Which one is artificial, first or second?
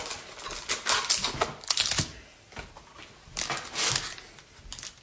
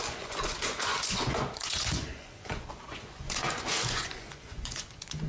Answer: second